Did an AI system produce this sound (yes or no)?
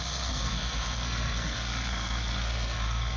yes